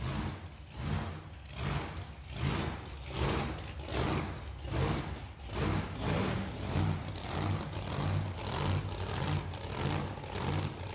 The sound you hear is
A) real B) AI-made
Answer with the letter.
A